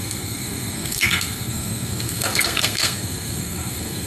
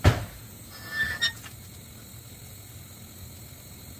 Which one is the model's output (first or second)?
first